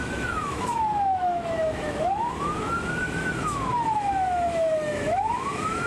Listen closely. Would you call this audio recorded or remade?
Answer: remade